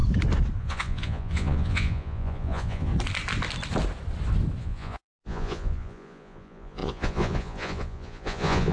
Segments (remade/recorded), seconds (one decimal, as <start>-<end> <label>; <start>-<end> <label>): 0.0-0.6 recorded; 0.6-2.9 remade; 2.9-4.6 recorded; 4.6-8.7 remade